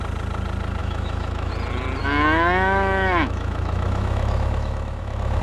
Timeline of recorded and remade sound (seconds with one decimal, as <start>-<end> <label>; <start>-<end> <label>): 0.0-0.8 recorded; 0.8-1.5 remade; 1.5-2.0 recorded; 2.0-5.4 remade